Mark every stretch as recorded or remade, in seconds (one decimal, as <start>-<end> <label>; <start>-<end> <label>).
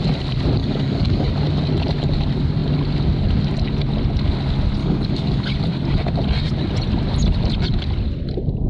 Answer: 0.0-0.6 recorded; 0.6-1.3 remade; 1.3-4.8 recorded; 4.8-5.5 remade; 5.5-8.7 recorded